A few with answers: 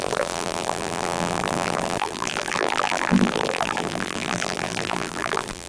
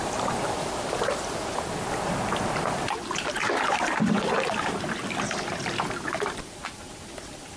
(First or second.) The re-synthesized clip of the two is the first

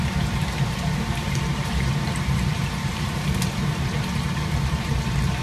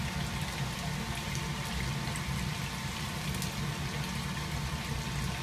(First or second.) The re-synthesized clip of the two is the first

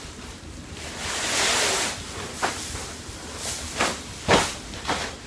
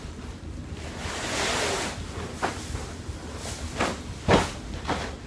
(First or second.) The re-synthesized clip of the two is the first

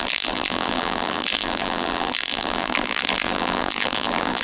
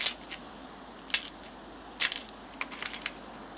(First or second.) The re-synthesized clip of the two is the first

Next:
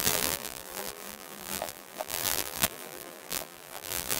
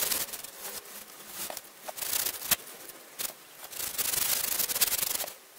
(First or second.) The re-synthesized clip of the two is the first